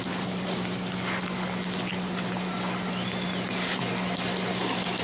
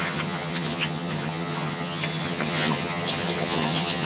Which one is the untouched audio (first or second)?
first